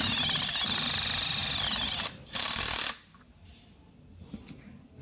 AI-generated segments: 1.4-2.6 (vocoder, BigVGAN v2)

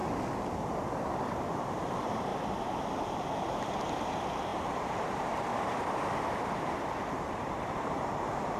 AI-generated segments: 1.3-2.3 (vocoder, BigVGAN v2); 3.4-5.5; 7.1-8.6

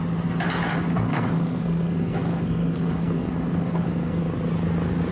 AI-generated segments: 1.1-4.2 (codec, SNAC)

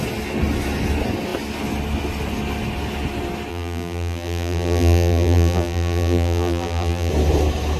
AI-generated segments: 3.5-7.1 (vocoder, BigVGAN v2)